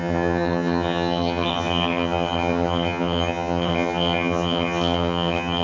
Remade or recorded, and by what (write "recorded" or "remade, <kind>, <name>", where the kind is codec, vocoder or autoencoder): remade, vocoder, HiFi-GAN